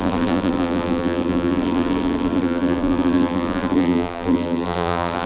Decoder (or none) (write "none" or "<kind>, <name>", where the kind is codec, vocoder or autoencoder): vocoder, BigVGAN v2